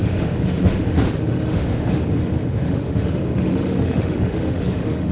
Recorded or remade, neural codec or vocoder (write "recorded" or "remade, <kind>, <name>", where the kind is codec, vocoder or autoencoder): remade, autoencoder, DAC-VAE